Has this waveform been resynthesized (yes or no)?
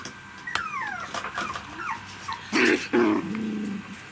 no